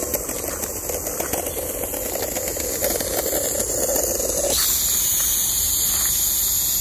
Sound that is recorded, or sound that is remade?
recorded